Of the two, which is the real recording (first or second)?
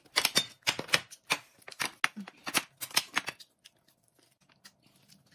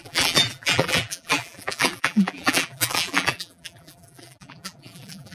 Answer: first